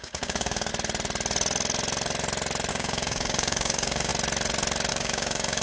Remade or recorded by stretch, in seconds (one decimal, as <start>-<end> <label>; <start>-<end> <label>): 0.0-0.7 remade; 0.7-2.7 recorded; 2.7-4.1 remade; 4.1-4.9 recorded; 4.9-5.6 remade